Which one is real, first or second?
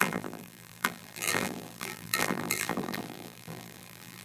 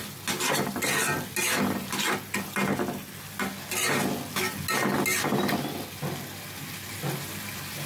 second